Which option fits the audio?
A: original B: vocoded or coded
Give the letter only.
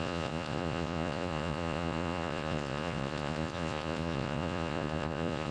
B